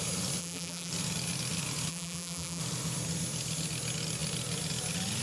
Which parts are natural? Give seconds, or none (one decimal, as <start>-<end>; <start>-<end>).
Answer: 0.0-0.4; 0.9-1.9; 2.6-5.2